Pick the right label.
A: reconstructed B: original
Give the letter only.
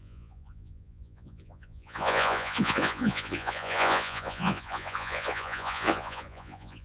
A